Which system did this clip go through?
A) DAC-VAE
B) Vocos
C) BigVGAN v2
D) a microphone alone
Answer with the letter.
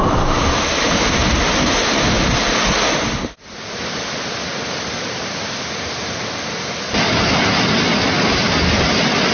D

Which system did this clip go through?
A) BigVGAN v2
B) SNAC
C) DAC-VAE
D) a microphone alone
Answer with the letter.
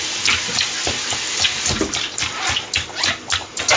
D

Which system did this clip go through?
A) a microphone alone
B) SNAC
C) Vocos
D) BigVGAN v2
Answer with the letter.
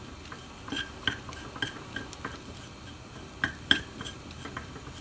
A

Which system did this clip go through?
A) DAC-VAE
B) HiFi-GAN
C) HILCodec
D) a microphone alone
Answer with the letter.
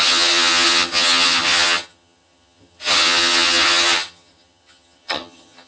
B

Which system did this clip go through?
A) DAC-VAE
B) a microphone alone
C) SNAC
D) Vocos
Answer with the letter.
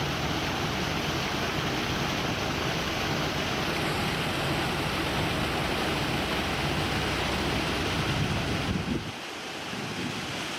B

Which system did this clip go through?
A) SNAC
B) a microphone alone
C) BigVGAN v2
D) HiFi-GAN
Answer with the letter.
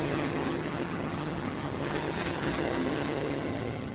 D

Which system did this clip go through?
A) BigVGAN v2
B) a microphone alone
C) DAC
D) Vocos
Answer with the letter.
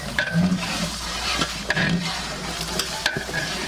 A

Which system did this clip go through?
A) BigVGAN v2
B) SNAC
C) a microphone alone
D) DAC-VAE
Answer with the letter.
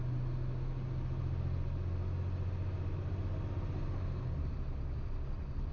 C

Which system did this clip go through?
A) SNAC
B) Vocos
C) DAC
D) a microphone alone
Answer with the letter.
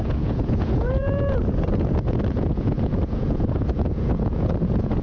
B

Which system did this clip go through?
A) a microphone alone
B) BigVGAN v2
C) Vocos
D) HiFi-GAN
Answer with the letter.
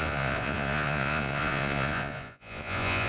C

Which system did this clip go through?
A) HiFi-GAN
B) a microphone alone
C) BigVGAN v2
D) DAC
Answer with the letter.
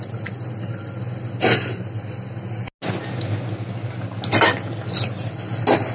B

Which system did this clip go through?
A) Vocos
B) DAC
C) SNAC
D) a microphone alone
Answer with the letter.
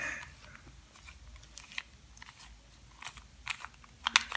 D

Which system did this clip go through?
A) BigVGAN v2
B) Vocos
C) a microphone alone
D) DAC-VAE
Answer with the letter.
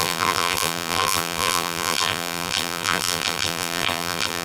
A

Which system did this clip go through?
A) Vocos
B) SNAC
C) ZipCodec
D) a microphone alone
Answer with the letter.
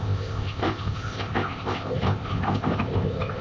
C